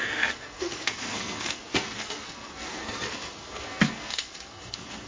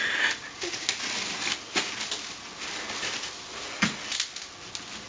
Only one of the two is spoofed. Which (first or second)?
first